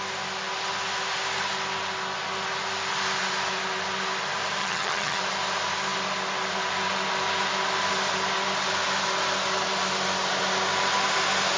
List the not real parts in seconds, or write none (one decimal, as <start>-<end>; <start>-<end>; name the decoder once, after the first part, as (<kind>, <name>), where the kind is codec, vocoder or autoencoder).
4.6-5.2 (vocoder, HiFi-GAN)